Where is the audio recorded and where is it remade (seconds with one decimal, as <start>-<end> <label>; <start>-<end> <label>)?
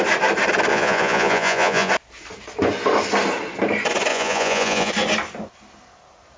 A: 0.0-0.7 recorded; 0.7-1.9 remade; 1.9-4.1 recorded; 4.1-4.9 remade; 4.9-6.4 recorded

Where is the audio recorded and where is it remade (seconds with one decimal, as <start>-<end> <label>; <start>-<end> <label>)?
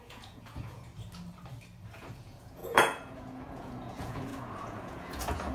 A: 0.0-0.9 remade; 0.9-1.9 recorded; 1.9-5.5 remade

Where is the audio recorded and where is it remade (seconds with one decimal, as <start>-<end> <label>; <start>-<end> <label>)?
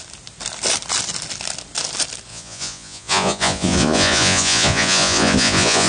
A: 0.0-2.3 recorded; 2.3-5.9 remade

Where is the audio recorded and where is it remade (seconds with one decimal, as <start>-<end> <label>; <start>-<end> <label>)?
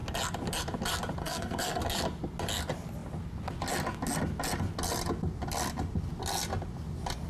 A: 0.0-1.2 recorded; 1.2-1.8 remade; 1.8-7.3 recorded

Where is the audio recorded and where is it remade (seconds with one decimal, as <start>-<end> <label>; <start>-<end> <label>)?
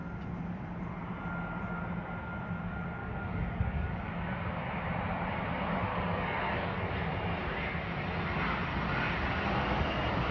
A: 0.0-3.0 recorded; 3.0-4.1 remade; 4.1-5.9 recorded; 5.9-6.9 remade; 6.9-10.3 recorded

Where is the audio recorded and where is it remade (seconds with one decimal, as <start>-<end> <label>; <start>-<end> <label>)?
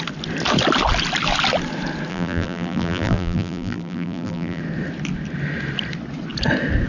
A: 0.0-2.1 recorded; 2.1-4.6 remade; 4.6-6.9 recorded